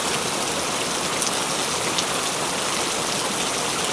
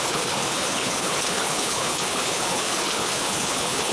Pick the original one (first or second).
first